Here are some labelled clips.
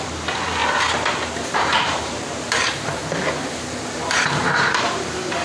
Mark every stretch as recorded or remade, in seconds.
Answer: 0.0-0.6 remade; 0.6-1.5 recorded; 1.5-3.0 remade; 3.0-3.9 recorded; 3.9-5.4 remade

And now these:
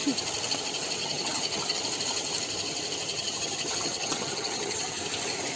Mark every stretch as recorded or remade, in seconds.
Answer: 0.0-1.0 recorded; 1.0-1.8 remade; 1.8-3.1 recorded; 3.1-5.0 remade; 5.0-5.6 recorded

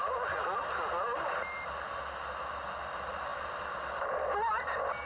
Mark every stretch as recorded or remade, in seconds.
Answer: 0.0-5.1 recorded

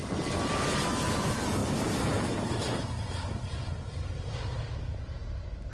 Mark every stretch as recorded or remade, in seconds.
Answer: 0.0-5.7 recorded

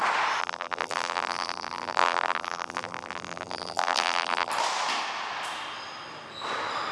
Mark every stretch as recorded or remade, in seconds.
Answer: 0.0-0.4 recorded; 0.4-4.5 remade; 4.5-6.9 recorded

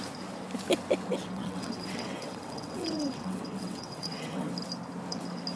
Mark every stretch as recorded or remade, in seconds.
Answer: 0.0-1.1 recorded; 1.1-4.5 remade; 4.5-5.6 recorded